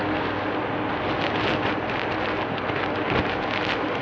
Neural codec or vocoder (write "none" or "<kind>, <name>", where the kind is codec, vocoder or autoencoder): none